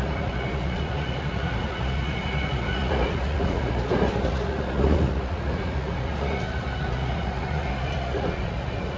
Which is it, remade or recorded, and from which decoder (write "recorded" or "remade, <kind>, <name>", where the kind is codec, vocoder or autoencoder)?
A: remade, vocoder, Vocos